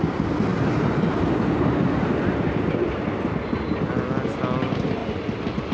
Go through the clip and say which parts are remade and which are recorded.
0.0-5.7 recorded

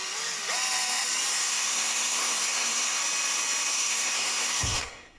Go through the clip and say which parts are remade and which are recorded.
0.0-1.3 recorded; 1.3-3.0 remade; 3.0-3.7 recorded; 3.7-5.2 remade

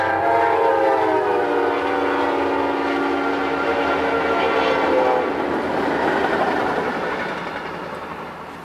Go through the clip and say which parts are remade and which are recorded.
0.0-8.6 recorded

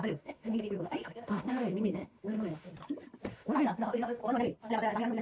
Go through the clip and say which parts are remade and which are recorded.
0.0-2.7 remade; 2.7-3.3 recorded; 3.3-4.2 remade; 4.2-5.2 recorded

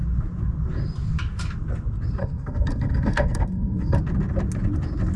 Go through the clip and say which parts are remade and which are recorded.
0.0-2.2 recorded; 2.2-4.0 remade; 4.0-5.2 recorded

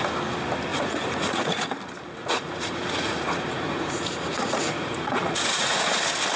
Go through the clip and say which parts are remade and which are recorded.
0.0-0.7 recorded; 0.7-1.8 remade; 1.8-2.2 recorded; 2.2-6.0 remade; 6.0-6.4 recorded

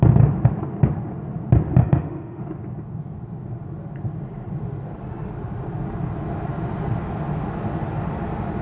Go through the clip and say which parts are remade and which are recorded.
0.0-1.8 recorded; 1.8-2.4 remade; 2.4-8.6 recorded